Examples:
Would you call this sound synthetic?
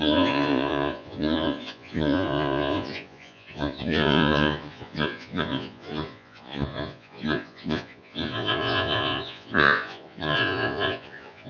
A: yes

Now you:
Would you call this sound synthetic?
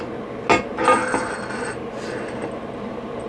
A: no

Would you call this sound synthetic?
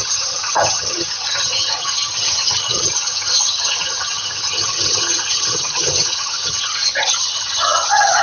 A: yes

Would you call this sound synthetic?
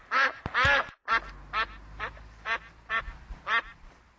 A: no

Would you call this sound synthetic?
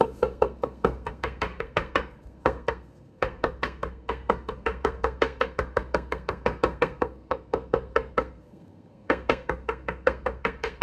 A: yes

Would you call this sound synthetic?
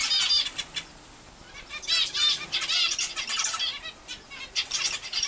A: no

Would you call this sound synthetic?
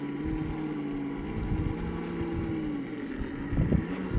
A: no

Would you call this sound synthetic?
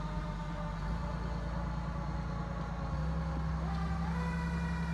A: no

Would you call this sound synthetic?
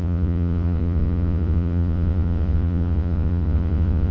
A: yes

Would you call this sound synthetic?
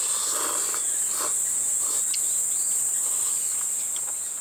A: no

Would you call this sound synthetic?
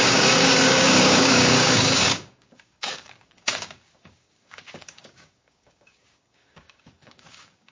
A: yes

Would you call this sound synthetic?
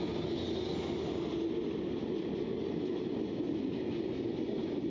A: no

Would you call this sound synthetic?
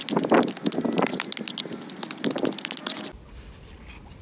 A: no